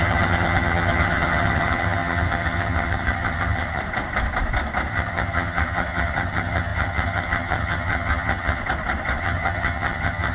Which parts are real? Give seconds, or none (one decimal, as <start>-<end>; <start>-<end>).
3.8-4.9; 8.6-9.2